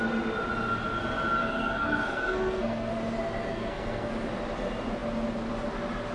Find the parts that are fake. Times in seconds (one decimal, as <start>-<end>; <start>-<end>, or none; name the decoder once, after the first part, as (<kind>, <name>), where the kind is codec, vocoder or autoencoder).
1.4-2.9 (codec, SNAC); 3.4-4.1